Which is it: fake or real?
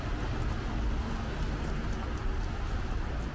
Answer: real